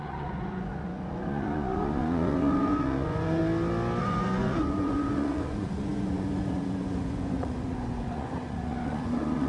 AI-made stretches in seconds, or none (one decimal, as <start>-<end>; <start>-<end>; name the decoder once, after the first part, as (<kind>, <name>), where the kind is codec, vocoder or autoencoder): 0.0-3.4 (vocoder, Vocos); 4.0-9.5